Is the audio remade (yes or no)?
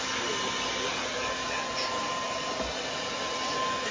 no